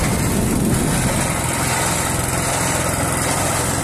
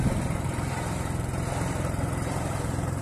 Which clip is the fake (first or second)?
second